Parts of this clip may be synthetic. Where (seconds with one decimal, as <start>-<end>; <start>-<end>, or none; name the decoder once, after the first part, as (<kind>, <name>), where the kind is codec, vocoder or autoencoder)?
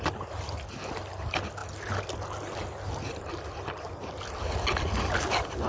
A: none